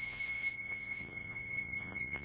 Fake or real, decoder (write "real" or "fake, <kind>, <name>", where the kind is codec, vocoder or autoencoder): fake, vocoder, Vocos